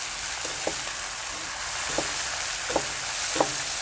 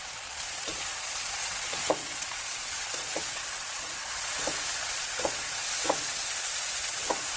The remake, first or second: second